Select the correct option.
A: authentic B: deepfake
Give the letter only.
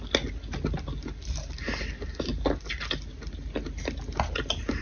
A